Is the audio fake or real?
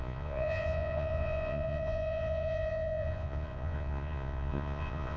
fake